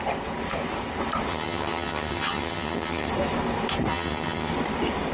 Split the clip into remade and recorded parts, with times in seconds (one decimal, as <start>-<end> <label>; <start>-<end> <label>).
0.0-1.3 recorded; 1.3-3.1 remade; 3.1-3.9 recorded; 3.9-4.5 remade; 4.5-5.1 recorded